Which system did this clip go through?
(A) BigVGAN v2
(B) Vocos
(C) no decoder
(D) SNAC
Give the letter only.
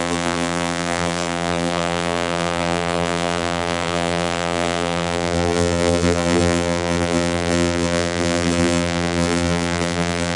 A